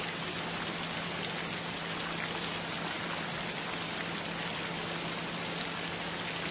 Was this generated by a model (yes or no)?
no